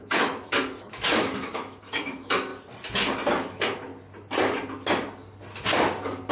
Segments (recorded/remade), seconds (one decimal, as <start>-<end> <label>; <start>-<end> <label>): 0.0-2.5 remade; 2.5-3.4 recorded; 3.4-3.9 remade; 3.9-6.3 recorded